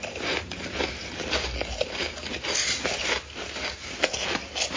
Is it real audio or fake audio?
real